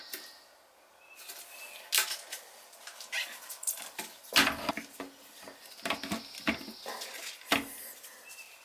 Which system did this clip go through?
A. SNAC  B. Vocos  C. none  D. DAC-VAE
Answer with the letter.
C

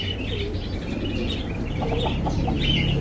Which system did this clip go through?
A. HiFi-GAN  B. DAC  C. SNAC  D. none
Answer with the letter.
D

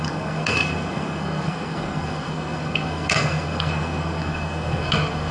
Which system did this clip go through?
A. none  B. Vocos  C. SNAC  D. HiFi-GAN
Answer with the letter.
C